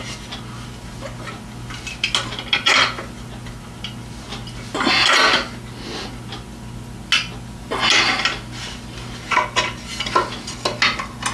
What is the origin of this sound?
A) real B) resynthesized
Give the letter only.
A